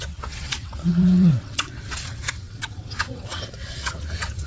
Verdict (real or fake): fake